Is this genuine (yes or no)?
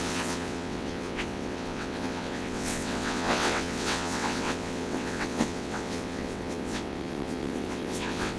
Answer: no